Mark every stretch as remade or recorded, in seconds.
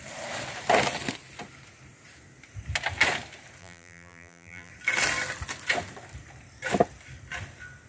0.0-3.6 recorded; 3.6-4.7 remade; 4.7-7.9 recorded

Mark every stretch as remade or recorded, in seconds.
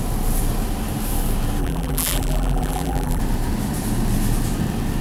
0.0-1.6 recorded; 1.6-3.2 remade; 3.2-5.0 recorded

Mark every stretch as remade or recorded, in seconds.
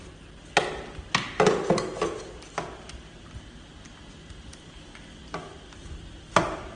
0.0-4.1 recorded; 4.1-6.8 remade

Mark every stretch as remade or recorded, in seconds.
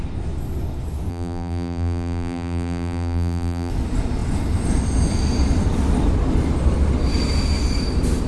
0.0-1.1 recorded; 1.1-3.7 remade; 3.7-8.3 recorded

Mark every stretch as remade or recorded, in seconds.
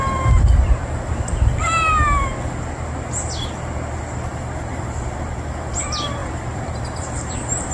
0.0-4.3 recorded; 4.3-5.1 remade; 5.1-6.2 recorded; 6.2-6.8 remade; 6.8-7.7 recorded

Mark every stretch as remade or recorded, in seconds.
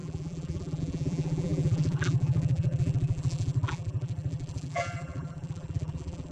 0.0-6.3 remade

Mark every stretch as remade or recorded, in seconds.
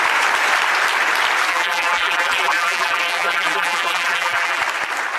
0.0-1.5 recorded; 1.5-4.6 remade; 4.6-5.2 recorded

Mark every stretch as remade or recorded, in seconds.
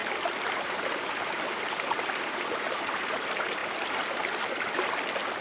0.0-0.5 recorded; 0.5-3.6 remade; 3.6-5.4 recorded